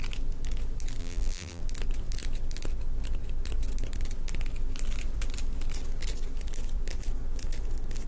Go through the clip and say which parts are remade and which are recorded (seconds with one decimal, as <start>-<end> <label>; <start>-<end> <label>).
0.0-1.0 recorded; 1.0-1.6 remade; 1.6-8.1 recorded